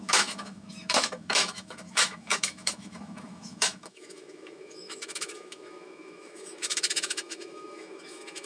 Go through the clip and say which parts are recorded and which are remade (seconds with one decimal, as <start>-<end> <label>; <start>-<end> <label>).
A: 0.0-8.5 remade